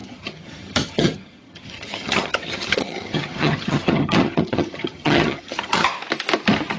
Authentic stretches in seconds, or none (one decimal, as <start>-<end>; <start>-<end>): 5.9-6.8